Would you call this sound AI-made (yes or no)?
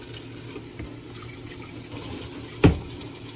no